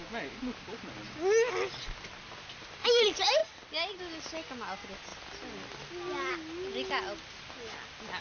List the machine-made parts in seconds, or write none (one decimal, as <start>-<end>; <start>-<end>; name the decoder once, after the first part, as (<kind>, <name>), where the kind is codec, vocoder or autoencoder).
none